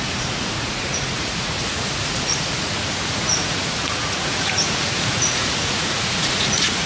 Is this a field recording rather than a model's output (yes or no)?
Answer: no